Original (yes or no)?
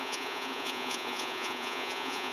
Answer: no